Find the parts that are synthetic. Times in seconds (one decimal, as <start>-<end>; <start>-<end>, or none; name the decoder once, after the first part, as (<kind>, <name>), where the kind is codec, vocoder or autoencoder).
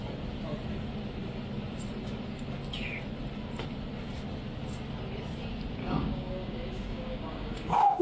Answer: 5.8-8.0 (codec, DAC)